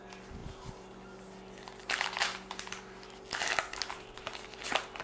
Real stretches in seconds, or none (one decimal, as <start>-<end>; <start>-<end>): 0.0-5.0